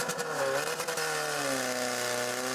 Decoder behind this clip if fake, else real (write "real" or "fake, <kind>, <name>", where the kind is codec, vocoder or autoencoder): real